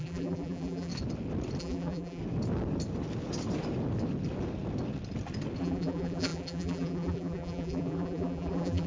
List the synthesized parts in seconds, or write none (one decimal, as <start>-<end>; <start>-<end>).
0.0-0.9; 1.6-2.2; 5.6-8.9